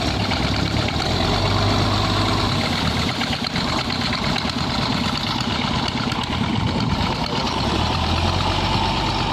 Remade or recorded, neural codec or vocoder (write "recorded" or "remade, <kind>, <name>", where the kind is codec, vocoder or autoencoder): recorded